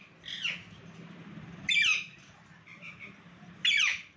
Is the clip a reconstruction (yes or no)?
no